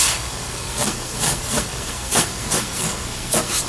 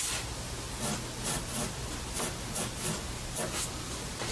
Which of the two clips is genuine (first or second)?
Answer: second